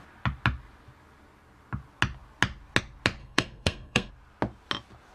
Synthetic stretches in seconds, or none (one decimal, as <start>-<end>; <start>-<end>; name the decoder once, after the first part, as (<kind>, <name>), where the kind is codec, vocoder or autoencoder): 3.2-4.1 (codec, SNAC)